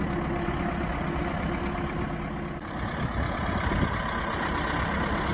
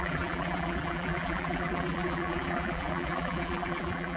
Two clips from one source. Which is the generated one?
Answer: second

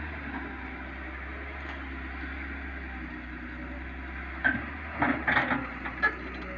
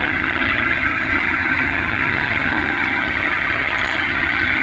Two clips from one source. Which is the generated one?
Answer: second